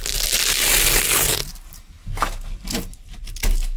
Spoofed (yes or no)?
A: no